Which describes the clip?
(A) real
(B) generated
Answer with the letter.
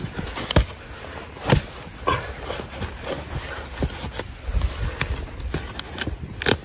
A